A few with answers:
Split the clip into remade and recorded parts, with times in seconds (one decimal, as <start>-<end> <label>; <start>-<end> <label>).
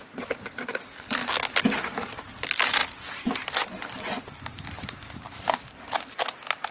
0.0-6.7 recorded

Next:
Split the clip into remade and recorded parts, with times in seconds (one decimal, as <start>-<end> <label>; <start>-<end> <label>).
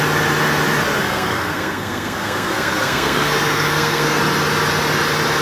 0.0-1.0 recorded; 1.0-4.2 remade; 4.2-5.4 recorded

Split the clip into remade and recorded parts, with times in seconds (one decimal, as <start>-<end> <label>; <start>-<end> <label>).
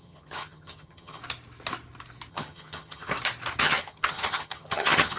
0.0-1.2 remade; 1.2-2.3 recorded; 2.3-3.1 remade; 3.1-3.6 recorded; 3.6-5.2 remade